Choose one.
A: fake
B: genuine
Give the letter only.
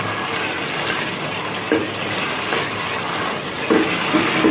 B